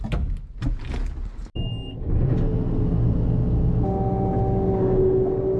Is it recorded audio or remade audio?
recorded